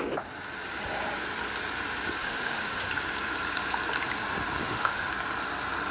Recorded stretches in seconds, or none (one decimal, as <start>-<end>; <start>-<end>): 0.0-2.2; 2.9-4.6; 5.1-5.9

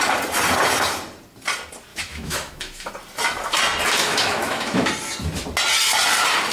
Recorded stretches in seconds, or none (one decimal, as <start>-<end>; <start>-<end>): 0.0-1.9; 2.9-4.0; 4.9-6.5

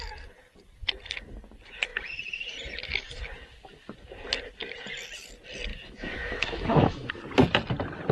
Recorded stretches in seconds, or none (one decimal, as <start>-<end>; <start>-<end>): 0.0-5.7; 7.1-8.1

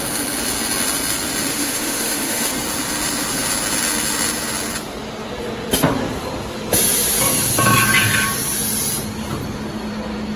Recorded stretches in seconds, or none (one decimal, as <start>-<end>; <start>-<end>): 0.0-1.5; 2.5-10.4

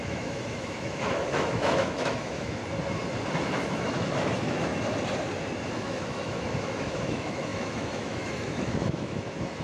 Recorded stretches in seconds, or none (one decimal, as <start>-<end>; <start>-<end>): 2.6-3.4; 4.7-5.7

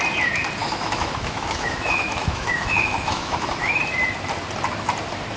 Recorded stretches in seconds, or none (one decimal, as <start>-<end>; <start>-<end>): 0.0-0.6; 3.8-5.4

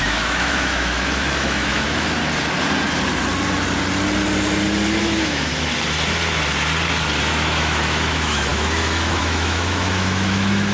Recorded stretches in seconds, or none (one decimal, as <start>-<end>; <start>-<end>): 2.2-5.0; 5.5-7.3

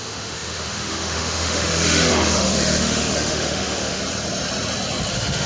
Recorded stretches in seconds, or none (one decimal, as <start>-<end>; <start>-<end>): 4.0-5.1